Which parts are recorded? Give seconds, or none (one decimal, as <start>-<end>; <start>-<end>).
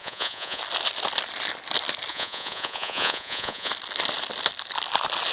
0.6-2.1; 3.7-5.3